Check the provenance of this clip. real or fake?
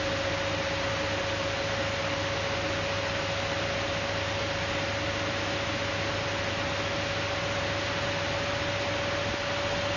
real